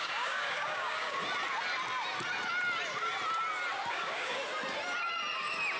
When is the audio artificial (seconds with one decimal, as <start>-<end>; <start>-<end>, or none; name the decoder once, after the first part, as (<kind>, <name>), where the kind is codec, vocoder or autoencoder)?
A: 0.0-1.2 (codec, DAC); 3.9-4.4